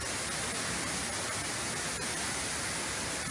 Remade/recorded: recorded